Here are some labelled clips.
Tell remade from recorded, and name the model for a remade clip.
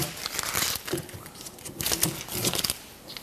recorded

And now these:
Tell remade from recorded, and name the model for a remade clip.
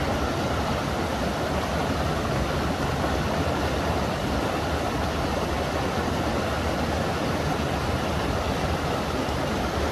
recorded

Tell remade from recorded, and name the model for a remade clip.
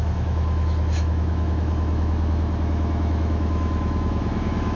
remade, autoencoder, DAC-VAE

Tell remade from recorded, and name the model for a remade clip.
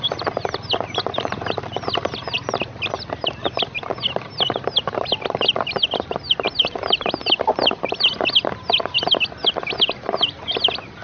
recorded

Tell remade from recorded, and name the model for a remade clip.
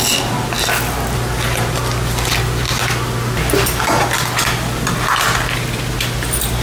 recorded